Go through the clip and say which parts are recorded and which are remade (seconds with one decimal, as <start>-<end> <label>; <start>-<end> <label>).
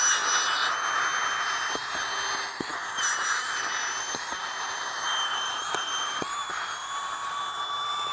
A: 0.0-4.0 recorded; 4.0-6.2 remade; 6.2-8.1 recorded